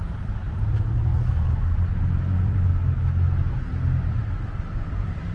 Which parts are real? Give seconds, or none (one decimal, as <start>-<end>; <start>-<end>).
1.1-2.2; 2.7-4.6